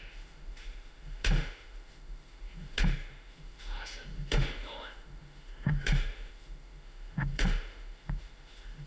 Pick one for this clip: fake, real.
fake